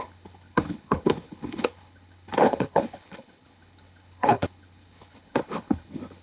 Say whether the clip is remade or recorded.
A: remade